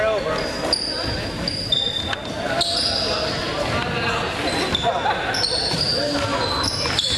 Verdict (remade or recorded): recorded